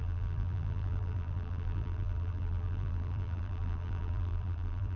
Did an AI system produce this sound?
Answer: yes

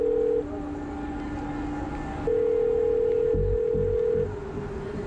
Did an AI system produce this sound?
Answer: no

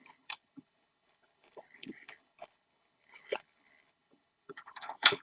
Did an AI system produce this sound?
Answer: yes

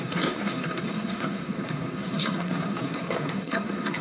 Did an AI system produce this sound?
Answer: yes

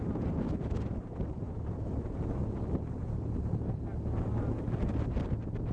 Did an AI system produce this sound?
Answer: no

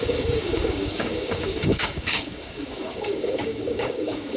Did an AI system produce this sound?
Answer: yes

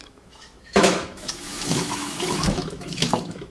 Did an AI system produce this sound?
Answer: yes